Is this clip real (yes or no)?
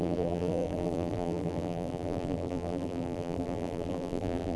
no